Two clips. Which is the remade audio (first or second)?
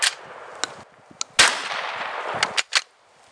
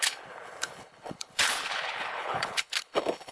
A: second